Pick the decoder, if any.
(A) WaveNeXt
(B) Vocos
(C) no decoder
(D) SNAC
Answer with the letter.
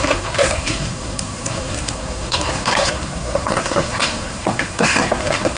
D